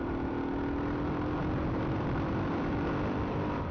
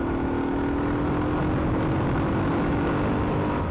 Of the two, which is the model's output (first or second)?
first